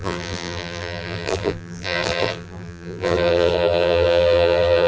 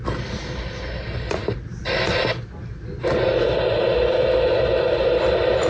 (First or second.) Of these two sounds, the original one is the second